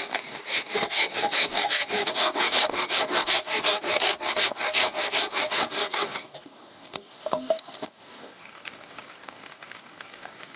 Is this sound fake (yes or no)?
yes